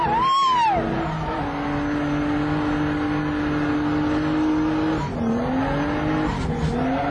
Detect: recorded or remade recorded